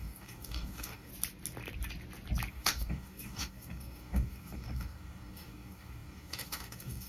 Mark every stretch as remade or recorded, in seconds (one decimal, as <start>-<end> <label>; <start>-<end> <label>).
0.0-1.1 remade; 1.1-2.5 recorded; 2.5-7.1 remade